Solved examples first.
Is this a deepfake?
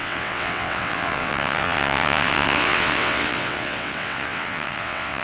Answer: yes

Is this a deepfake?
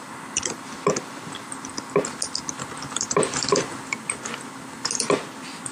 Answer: no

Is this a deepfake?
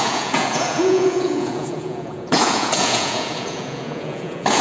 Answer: yes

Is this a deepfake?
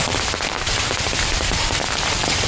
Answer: yes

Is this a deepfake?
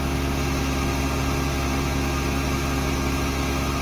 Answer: no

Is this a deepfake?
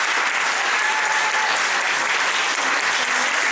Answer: no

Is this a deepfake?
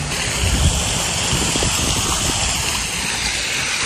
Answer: no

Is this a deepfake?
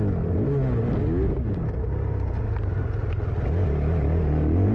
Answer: no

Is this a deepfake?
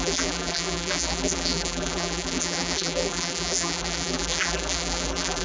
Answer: yes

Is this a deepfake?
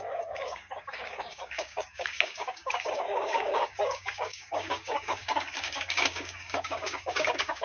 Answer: yes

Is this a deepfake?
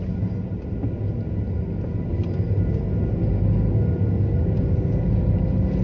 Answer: no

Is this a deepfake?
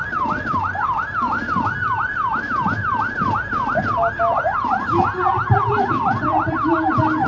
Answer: no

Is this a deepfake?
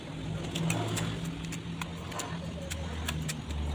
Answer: no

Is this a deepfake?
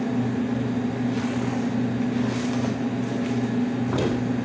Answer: no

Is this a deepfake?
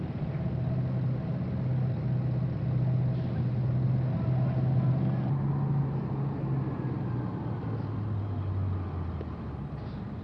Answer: no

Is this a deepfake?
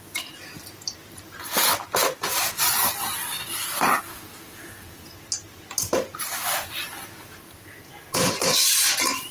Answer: no